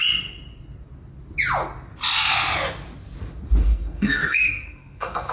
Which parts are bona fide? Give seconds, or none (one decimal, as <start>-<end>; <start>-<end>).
0.0-3.6